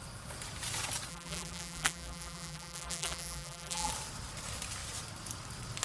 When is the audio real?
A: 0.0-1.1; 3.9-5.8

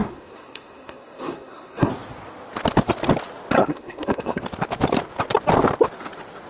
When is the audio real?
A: 1.9-3.6; 4.4-6.5